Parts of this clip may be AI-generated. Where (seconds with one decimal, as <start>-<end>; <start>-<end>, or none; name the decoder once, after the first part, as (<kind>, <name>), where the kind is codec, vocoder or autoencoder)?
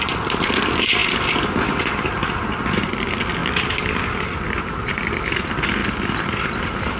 none